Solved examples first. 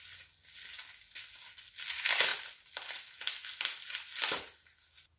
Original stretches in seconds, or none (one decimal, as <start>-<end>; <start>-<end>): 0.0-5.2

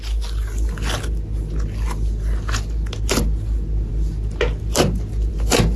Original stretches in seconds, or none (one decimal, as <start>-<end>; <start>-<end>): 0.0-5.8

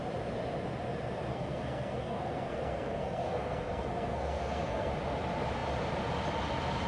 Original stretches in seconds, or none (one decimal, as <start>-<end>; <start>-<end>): 0.0-1.3; 4.9-6.9

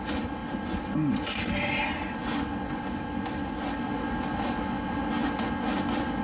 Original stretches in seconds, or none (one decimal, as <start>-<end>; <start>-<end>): 0.0-6.2

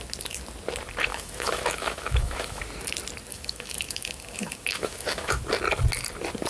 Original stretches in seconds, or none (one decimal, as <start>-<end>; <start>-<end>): 0.0-1.1; 2.6-3.3; 5.4-6.5

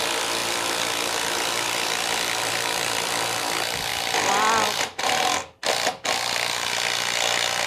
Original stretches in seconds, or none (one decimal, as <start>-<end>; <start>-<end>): 0.0-0.4; 3.1-3.9; 5.7-7.7